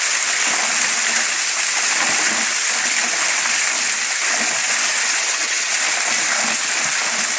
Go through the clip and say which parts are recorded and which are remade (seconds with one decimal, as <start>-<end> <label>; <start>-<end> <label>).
0.0-4.9 recorded; 4.9-5.7 remade; 5.7-7.4 recorded